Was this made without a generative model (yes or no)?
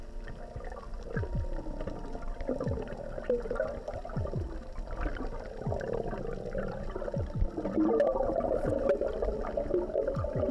yes